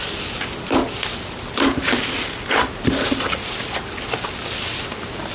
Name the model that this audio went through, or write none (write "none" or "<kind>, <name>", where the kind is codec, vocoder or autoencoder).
none